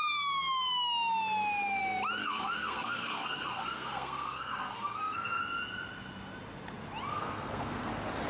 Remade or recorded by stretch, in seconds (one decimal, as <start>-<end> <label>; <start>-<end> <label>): 0.0-2.2 recorded; 2.2-5.4 remade; 5.4-7.1 recorded; 7.1-7.9 remade; 7.9-8.3 recorded